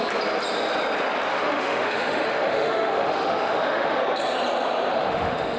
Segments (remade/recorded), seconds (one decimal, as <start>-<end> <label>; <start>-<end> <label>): 0.0-1.3 recorded; 1.3-4.0 remade; 4.0-4.9 recorded; 4.9-5.6 remade